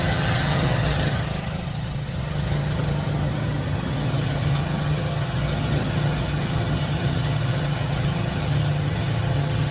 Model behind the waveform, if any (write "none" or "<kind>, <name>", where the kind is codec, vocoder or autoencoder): vocoder, HiFi-GAN